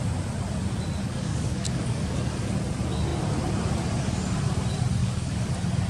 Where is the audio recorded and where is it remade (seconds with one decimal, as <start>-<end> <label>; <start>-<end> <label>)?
0.0-1.0 recorded; 1.0-2.2 remade; 2.2-5.0 recorded; 5.0-5.5 remade; 5.5-5.9 recorded